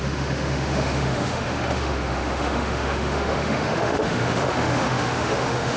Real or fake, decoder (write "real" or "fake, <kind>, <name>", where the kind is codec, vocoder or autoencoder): fake, autoencoder, DAC-VAE